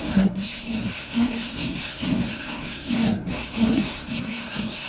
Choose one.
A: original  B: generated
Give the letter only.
B